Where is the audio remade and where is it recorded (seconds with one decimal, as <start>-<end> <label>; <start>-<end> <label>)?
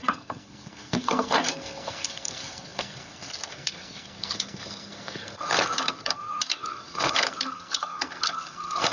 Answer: 0.0-8.9 remade